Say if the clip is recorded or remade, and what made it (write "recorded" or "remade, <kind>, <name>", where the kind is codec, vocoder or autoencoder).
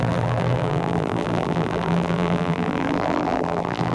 remade, vocoder, BigVGAN v2